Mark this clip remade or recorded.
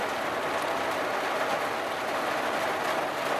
recorded